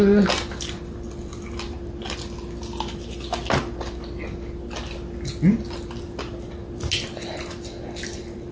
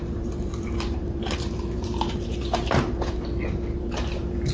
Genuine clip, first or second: first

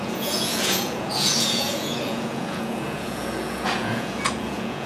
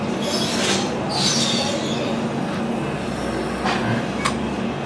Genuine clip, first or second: second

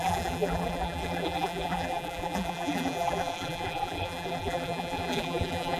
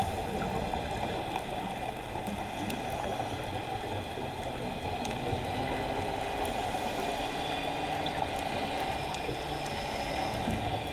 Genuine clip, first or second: second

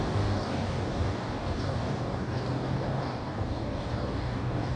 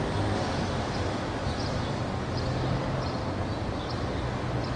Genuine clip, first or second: second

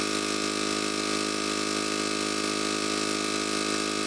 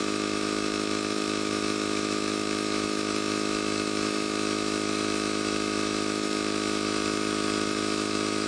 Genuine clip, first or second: first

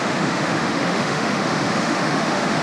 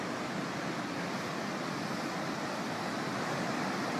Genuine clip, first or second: second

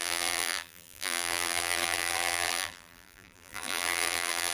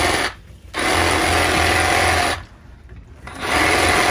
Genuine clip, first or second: second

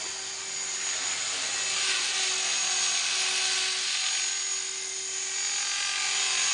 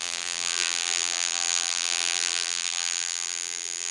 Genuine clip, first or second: first